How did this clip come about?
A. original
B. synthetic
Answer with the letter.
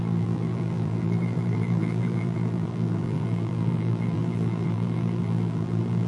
B